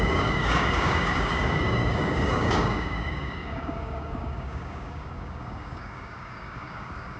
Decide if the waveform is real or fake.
fake